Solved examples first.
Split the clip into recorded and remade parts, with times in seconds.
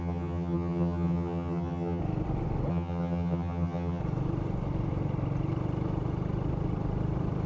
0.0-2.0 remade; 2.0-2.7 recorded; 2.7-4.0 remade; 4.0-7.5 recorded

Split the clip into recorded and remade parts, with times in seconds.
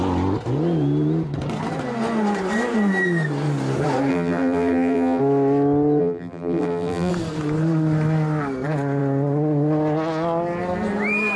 0.0-4.1 recorded; 4.1-5.2 remade; 5.2-6.0 recorded; 6.0-7.1 remade; 7.1-11.4 recorded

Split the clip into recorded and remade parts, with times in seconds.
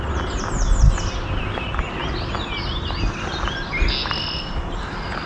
0.0-5.3 recorded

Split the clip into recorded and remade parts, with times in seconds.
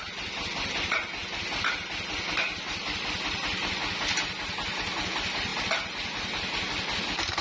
0.0-7.4 recorded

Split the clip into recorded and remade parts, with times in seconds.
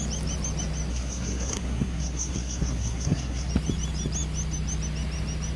0.0-0.9 recorded; 0.9-3.5 remade; 3.5-5.6 recorded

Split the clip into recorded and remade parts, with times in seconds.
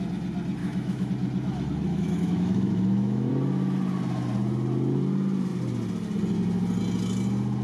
0.0-0.6 recorded; 0.6-1.1 remade; 1.1-1.9 recorded; 1.9-3.3 remade; 3.3-7.6 recorded